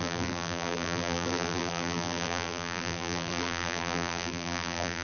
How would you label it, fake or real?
fake